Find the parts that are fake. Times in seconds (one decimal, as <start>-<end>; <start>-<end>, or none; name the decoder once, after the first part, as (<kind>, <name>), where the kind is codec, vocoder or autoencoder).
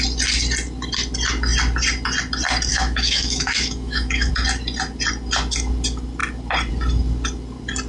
2.7-4.3 (autoencoder, DAC-VAE)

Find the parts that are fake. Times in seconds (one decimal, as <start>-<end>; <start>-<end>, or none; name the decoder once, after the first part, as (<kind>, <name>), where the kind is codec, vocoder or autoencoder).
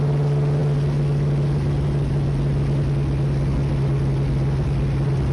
none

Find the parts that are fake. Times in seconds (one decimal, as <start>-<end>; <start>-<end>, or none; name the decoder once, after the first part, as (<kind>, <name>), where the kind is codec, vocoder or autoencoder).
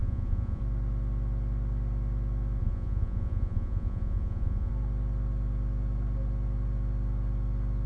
0.0-0.6 (vocoder, Vocos); 2.6-4.7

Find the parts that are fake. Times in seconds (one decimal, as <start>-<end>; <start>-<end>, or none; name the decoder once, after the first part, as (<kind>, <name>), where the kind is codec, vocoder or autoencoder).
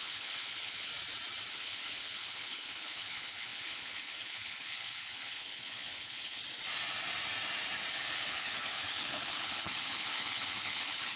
0.0-0.9 (codec, HILCodec); 1.5-6.4; 7.9-11.2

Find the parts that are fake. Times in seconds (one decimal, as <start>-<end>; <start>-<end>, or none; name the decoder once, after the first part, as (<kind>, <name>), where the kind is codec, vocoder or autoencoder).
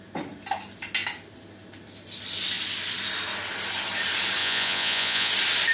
4.4-5.3 (vocoder, Vocos)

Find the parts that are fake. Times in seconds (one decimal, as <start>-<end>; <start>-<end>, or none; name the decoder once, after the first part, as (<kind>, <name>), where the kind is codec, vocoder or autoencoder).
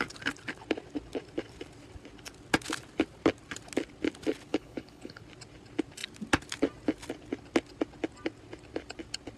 4.5-5.2 (codec, HILCodec)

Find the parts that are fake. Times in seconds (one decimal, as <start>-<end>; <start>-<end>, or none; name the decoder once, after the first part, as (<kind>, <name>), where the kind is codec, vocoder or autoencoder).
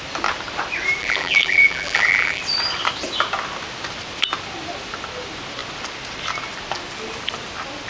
1.0-2.4 (vocoder, BigVGAN v2)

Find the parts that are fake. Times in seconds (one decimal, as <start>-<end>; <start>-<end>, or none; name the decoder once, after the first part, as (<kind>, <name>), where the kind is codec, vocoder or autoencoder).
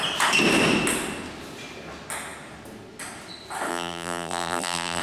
3.7-5.0 (vocoder, BigVGAN v2)